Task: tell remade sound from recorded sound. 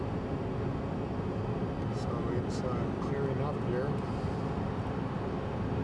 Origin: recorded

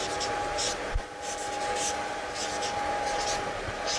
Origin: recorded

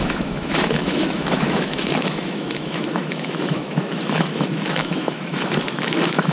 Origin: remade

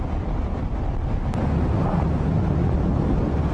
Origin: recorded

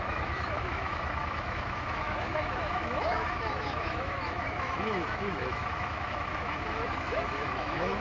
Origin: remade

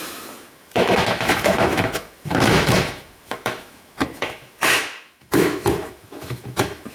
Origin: remade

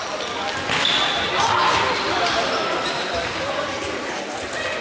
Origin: recorded